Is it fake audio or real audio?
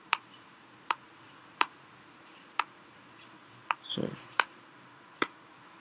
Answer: fake